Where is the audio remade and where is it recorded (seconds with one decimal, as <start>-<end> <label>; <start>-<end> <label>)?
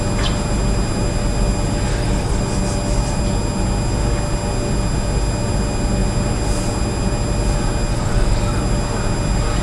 0.0-1.9 recorded; 1.9-2.4 remade; 2.4-7.9 recorded; 7.9-8.6 remade; 8.6-9.6 recorded